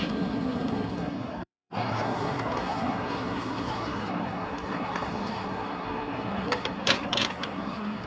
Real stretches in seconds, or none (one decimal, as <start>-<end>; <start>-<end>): none